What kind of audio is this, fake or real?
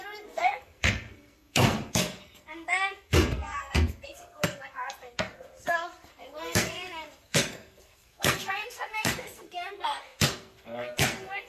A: fake